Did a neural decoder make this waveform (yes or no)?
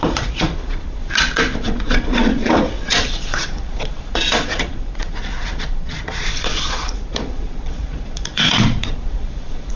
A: yes